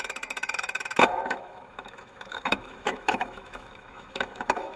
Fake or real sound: fake